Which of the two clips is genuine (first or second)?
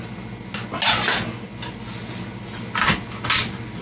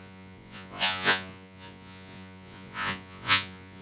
first